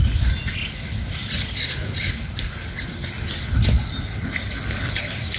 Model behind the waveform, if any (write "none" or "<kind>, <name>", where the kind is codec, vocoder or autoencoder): none